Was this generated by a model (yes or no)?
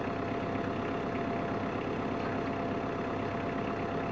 no